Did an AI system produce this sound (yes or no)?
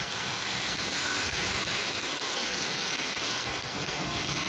yes